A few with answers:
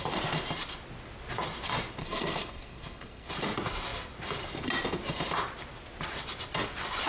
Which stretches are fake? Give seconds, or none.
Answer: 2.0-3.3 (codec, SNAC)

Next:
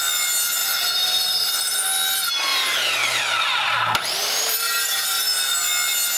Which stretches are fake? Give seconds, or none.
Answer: 0.6-1.5 (vocoder, BigVGAN v2); 2.5-3.2; 4.2-5.2

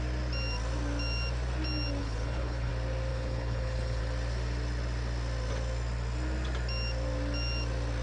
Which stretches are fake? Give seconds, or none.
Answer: 2.0-2.7 (codec, HILCodec); 3.1-4.0

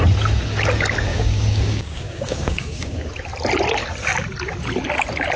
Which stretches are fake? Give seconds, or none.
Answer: 1.1-3.1 (codec, DAC)

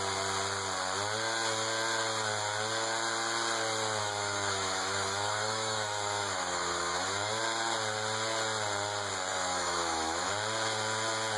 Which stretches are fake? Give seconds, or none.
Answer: 4.0-7.4 (autoencoder, DAC-VAE); 9.3-10.3